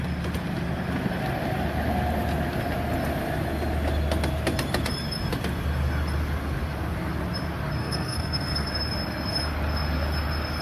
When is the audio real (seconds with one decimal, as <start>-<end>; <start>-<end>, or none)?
0.0-7.8; 8.7-10.6